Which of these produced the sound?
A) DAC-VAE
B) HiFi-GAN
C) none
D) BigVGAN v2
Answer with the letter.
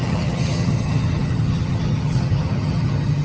B